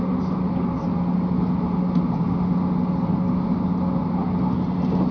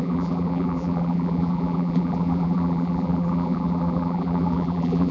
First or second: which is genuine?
first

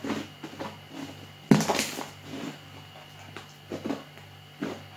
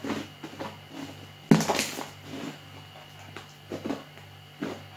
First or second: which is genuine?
second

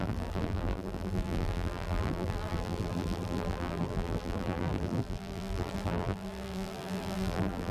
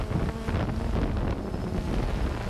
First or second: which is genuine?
second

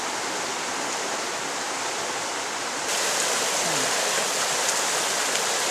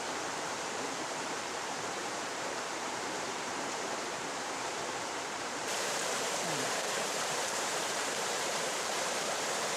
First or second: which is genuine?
first